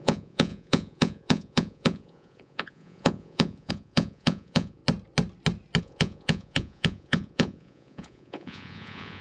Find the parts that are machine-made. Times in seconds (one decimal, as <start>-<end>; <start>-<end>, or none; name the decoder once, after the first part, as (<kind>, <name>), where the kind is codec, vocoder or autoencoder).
0.0-4.8 (vocoder, Vocos); 5.8-9.2